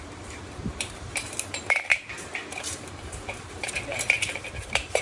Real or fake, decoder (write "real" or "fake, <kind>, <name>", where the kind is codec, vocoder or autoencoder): fake, vocoder, BigVGAN v2